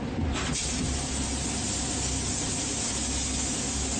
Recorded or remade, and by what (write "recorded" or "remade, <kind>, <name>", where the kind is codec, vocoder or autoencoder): recorded